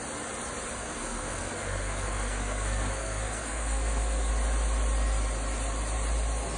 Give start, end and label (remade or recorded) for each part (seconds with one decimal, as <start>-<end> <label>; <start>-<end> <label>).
0.0-0.8 recorded; 0.8-4.3 remade; 4.3-6.6 recorded